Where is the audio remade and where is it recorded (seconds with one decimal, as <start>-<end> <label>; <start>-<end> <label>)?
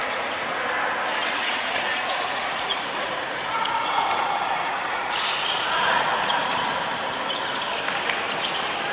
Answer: 0.0-1.2 recorded; 1.2-6.5 remade; 6.5-8.9 recorded